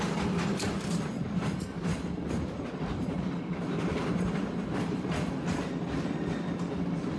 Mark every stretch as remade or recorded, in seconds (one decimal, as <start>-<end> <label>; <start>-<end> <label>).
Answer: 0.0-1.9 recorded; 1.9-5.7 remade; 5.7-7.2 recorded